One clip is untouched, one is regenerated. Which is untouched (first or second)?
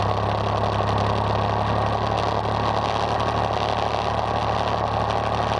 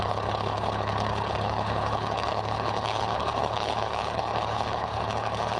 first